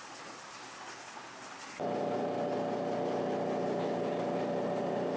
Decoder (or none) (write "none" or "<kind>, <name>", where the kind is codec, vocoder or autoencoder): none